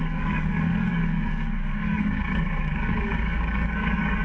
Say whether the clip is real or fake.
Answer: fake